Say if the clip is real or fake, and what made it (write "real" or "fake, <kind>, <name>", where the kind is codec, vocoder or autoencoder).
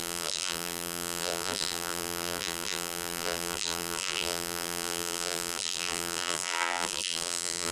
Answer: fake, vocoder, BigVGAN v2